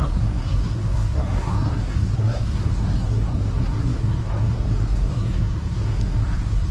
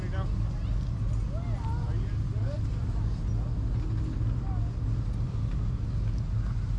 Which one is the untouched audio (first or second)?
second